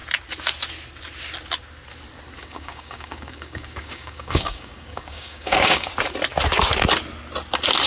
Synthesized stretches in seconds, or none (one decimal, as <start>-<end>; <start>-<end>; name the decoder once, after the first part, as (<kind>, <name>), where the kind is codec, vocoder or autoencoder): 2.4-5.9 (codec, DAC)